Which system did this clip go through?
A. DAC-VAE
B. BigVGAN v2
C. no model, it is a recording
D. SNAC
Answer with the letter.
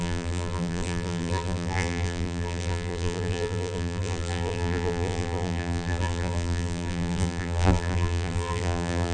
B